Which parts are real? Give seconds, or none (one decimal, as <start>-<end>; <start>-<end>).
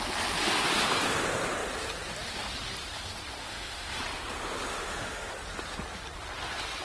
0.0-3.4; 4.0-4.7; 5.3-6.8